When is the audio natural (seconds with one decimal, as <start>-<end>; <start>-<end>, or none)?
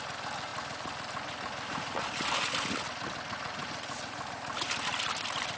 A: 0.0-5.6